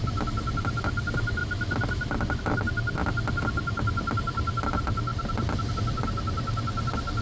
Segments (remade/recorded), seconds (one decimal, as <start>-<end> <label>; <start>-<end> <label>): 0.0-7.2 recorded